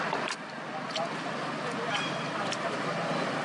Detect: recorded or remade remade